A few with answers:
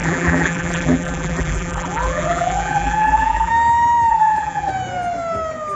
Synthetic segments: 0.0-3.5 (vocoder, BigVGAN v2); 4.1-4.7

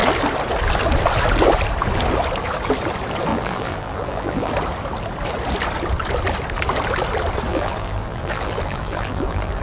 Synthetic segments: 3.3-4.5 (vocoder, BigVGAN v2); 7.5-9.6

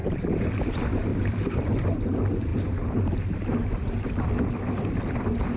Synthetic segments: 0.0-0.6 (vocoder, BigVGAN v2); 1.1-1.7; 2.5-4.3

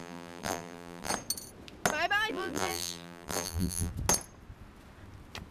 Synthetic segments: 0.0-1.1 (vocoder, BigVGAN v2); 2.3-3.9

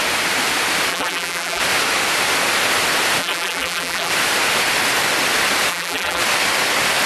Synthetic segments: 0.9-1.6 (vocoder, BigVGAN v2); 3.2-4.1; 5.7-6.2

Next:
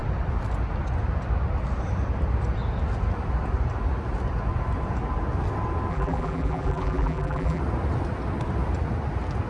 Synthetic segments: 5.9-7.6 (vocoder, BigVGAN v2)

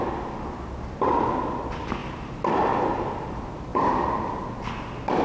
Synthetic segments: 3.7-4.3 (vocoder, BigVGAN v2)